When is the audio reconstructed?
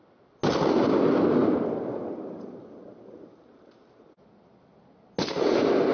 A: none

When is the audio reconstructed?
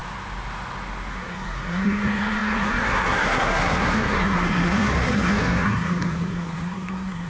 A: 1.1-7.3 (codec, SNAC)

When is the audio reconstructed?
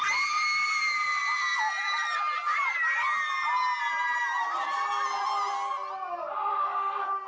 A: none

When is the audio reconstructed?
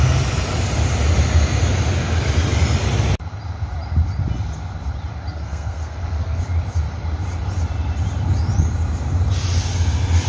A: 5.3-6.4 (codec, SNAC)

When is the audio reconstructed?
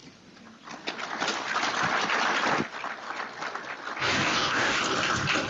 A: 4.0-4.8 (codec, DAC)